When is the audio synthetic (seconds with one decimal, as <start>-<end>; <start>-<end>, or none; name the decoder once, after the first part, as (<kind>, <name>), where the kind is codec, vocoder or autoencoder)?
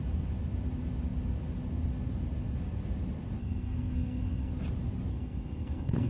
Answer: 3.4-4.5 (codec, SNAC); 5.1-6.1